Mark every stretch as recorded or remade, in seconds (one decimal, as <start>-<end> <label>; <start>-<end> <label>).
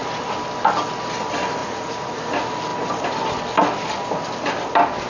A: 0.0-1.6 recorded; 1.6-2.1 remade; 2.1-5.1 recorded